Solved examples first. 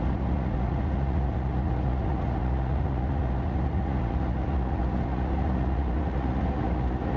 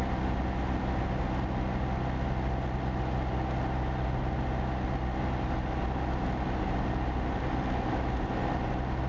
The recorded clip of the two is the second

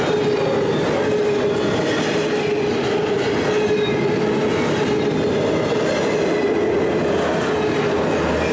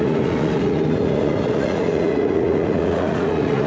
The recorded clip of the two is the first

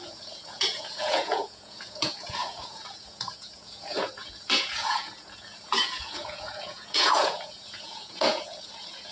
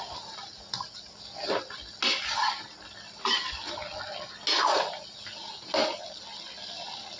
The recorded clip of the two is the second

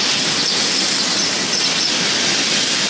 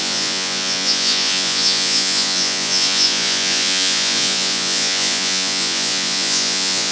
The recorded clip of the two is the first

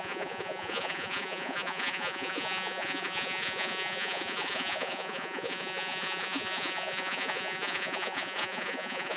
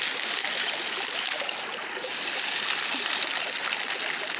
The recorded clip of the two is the second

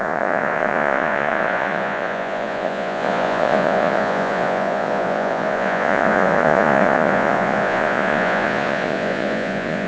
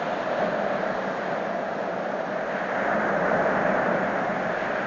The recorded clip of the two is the second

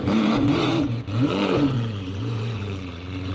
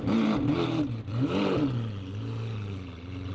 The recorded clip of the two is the second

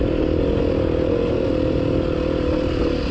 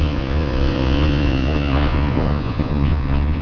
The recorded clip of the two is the first